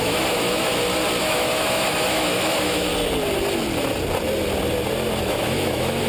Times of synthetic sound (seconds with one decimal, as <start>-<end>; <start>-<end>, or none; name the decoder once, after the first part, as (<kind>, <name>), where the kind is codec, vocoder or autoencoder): 0.0-0.7 (autoencoder, DAC-VAE); 1.2-2.9; 5.2-6.1